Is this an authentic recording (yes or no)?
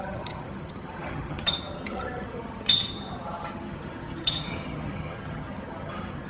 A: no